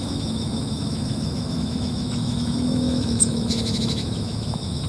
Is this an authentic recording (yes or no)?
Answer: no